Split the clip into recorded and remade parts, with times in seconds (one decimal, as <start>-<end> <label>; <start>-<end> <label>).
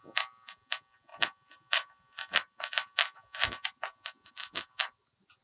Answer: 0.0-5.4 recorded